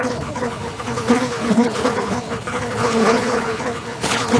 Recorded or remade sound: remade